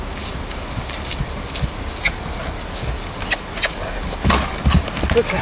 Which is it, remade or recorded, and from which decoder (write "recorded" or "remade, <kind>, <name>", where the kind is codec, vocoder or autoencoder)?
recorded